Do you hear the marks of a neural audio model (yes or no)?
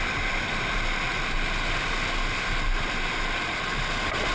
no